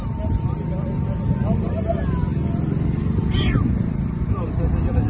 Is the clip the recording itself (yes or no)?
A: yes